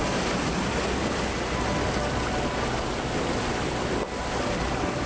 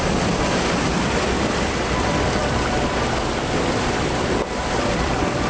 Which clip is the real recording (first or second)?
first